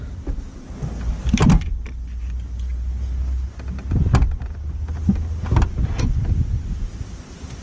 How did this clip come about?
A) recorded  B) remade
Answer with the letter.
A